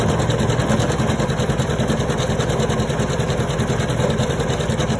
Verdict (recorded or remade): recorded